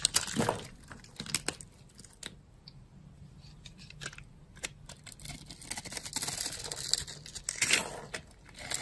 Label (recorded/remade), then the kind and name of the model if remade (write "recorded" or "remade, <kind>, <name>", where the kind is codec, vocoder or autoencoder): recorded